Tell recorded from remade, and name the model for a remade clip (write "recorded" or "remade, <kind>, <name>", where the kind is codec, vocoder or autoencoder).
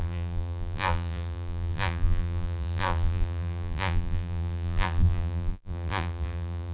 remade, vocoder, BigVGAN v2